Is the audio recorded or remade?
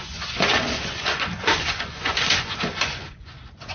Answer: remade